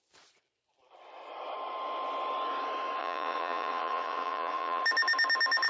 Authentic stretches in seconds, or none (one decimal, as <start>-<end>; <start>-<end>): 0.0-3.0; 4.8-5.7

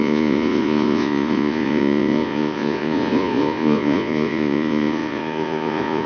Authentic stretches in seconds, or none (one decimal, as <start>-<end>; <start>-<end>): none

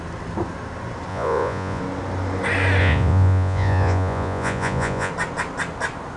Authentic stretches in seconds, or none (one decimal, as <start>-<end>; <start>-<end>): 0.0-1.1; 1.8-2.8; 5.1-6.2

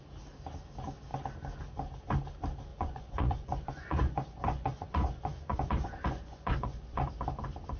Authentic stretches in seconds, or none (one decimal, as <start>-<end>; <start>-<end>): 0.0-2.7; 7.0-7.8